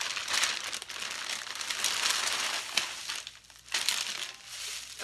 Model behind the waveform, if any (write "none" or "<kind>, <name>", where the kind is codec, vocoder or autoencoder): none